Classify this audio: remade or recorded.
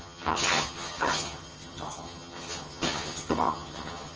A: remade